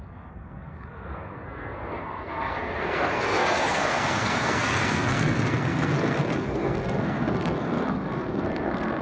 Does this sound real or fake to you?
fake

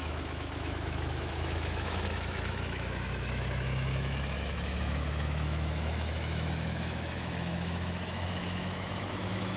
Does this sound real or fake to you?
fake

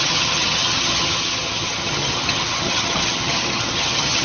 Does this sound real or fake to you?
fake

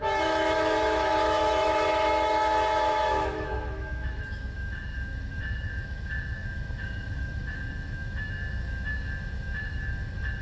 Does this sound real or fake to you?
fake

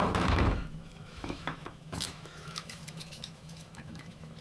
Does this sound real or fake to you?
fake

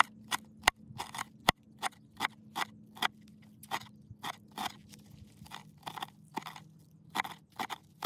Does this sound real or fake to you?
real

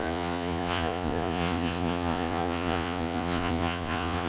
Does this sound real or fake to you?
fake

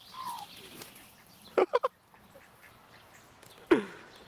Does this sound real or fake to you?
real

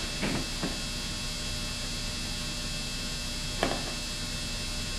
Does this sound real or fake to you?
real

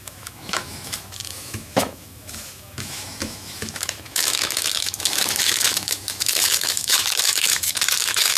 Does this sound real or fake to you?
fake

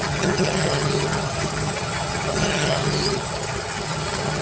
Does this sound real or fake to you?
fake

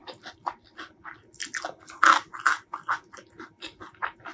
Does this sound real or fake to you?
real